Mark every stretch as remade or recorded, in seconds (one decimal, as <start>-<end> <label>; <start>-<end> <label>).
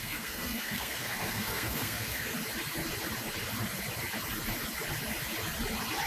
0.0-2.3 remade; 2.3-6.1 recorded